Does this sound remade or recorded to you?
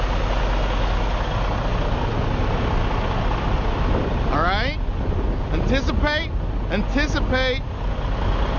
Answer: recorded